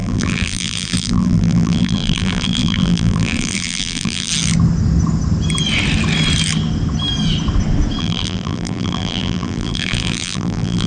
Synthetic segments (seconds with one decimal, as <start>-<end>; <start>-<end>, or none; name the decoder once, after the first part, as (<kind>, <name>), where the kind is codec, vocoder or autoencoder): 0.0-4.3 (vocoder, BigVGAN v2); 8.0-10.9